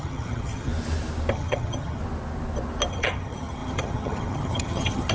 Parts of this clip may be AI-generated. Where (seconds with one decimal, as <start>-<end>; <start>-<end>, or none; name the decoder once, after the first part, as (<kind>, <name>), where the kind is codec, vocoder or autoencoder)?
0.0-0.7 (vocoder, HiFi-GAN); 1.3-2.0; 2.9-5.1